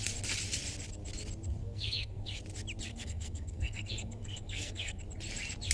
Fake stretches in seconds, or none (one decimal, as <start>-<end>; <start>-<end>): 1.6-2.4; 2.9-5.0